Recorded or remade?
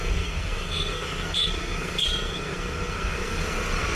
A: remade